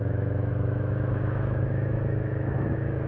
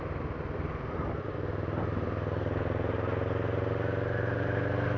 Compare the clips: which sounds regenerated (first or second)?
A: first